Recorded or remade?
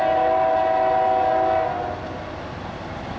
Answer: recorded